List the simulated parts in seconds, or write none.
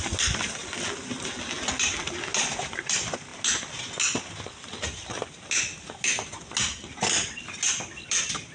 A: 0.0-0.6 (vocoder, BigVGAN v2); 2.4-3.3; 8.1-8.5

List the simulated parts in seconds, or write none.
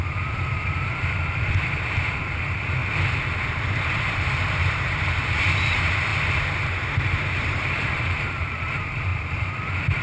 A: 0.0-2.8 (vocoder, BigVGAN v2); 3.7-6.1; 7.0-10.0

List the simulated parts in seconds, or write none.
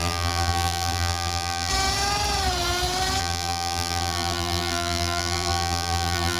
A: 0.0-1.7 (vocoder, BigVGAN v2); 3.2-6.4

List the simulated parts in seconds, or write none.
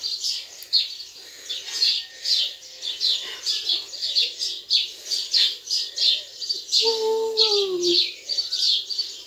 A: 0.0-0.5 (vocoder, BigVGAN v2)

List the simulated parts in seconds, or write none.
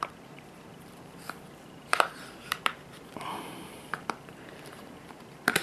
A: 0.0-5.6 (vocoder, BigVGAN v2)